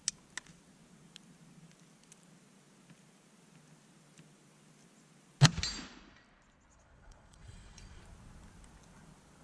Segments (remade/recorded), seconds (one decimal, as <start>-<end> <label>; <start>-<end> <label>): 0.0-6.7 recorded; 6.7-8.0 remade; 8.0-9.4 recorded